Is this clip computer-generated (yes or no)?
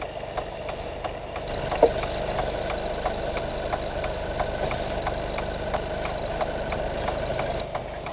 no